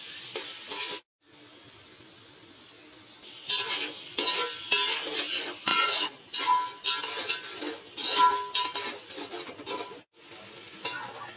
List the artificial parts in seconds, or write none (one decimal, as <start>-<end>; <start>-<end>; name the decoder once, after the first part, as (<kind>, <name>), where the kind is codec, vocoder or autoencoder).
5.7-6.4 (vocoder, Vocos)